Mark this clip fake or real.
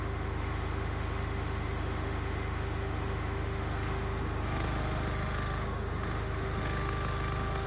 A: fake